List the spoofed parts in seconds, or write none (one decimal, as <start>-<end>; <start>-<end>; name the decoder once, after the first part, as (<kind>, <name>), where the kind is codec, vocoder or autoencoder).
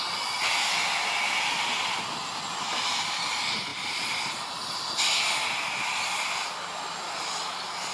3.7-4.9 (vocoder, BigVGAN v2)